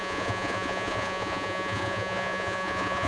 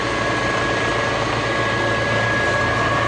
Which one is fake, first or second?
first